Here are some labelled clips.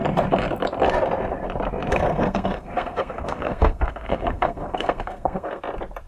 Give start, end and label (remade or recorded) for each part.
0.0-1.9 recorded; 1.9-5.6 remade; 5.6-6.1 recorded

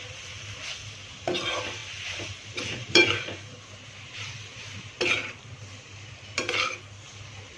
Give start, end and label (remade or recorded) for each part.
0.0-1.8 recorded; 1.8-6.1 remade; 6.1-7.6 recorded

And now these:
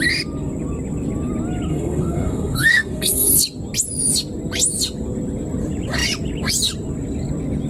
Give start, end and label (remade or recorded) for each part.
0.0-1.7 recorded; 1.7-3.3 remade; 3.3-7.7 recorded